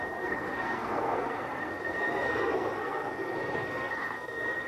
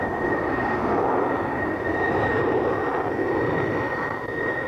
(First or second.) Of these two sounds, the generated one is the first